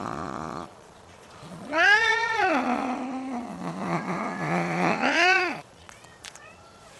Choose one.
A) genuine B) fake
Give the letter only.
B